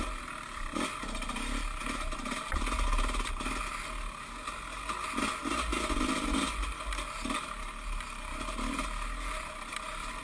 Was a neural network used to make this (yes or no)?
no